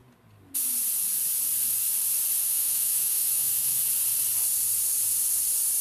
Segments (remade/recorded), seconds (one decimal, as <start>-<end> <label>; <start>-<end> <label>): 0.0-2.4 recorded; 2.4-3.8 remade; 3.8-5.8 recorded